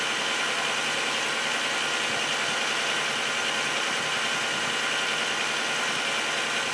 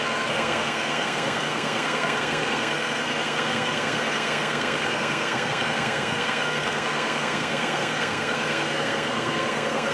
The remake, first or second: second